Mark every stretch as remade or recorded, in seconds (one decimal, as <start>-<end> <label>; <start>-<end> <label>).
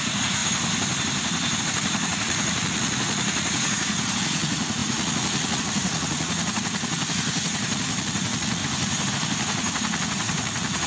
0.0-0.4 remade; 0.4-1.6 recorded; 1.6-8.6 remade; 8.6-9.1 recorded; 9.1-10.9 remade